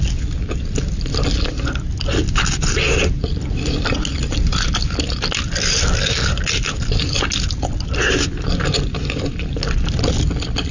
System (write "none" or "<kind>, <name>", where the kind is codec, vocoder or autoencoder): none